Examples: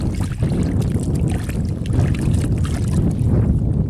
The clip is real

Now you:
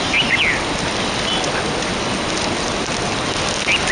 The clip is real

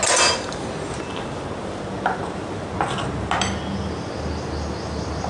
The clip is real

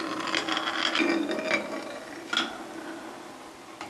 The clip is real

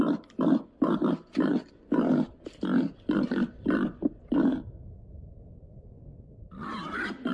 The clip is real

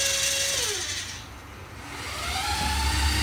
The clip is real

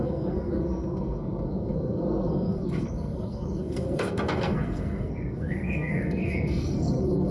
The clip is fake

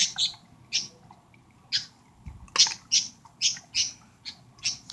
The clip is real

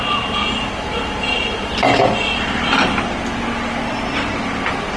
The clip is real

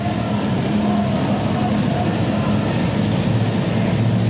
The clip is real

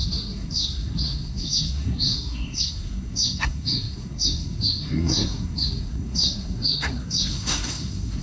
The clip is fake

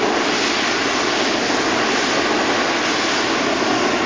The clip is real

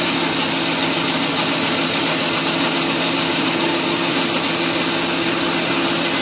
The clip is real